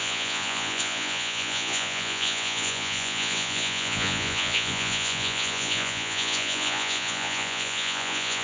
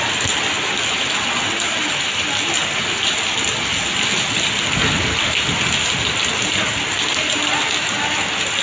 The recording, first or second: second